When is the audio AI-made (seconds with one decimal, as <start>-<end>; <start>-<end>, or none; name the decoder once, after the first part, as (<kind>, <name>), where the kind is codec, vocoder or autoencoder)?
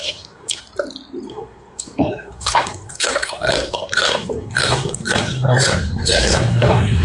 0.0-0.6 (codec, SNAC); 1.3-7.0